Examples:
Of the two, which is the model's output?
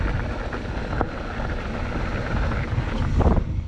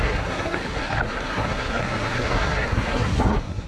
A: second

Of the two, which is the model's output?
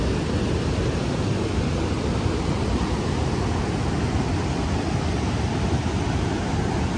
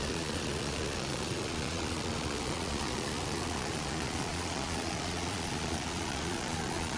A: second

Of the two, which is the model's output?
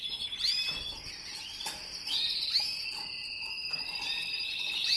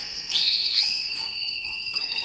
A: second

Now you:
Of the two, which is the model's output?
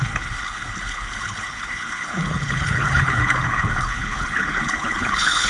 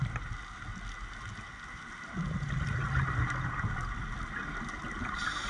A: first